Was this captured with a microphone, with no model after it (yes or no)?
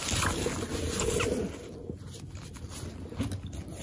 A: yes